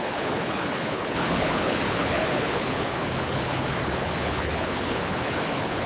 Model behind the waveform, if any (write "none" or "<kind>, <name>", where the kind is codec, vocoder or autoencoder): codec, HILCodec